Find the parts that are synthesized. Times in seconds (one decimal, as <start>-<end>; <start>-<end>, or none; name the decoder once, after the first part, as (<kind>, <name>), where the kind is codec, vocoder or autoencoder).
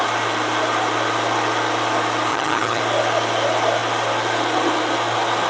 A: 2.3-2.8 (vocoder, HiFi-GAN)